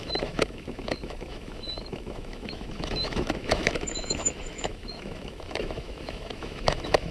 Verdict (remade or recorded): remade